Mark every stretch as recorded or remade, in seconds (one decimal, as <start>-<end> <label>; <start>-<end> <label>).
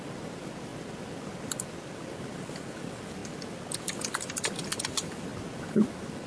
0.0-6.3 recorded